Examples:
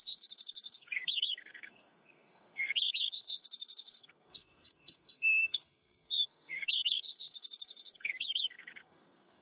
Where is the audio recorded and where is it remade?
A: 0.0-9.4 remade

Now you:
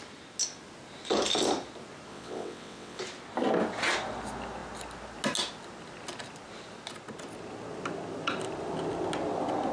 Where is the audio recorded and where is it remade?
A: 0.0-2.1 recorded; 2.1-3.0 remade; 3.0-9.7 recorded

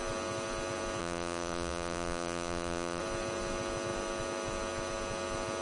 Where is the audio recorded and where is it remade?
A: 0.0-1.0 recorded; 1.0-3.0 remade; 3.0-5.6 recorded

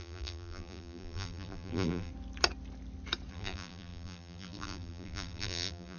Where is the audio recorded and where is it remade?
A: 0.0-2.1 remade; 2.1-3.3 recorded; 3.3-6.0 remade

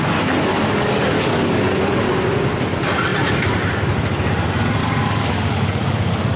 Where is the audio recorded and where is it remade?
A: 0.0-0.5 recorded; 0.5-2.0 remade; 2.0-4.8 recorded; 4.8-6.4 remade